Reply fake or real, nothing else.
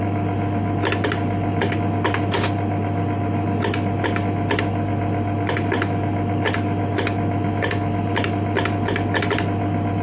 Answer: real